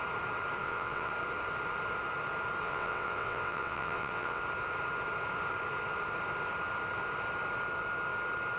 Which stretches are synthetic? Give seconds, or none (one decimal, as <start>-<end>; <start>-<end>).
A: 0.6-1.1; 2.6-4.4